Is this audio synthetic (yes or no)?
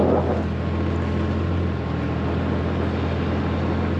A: no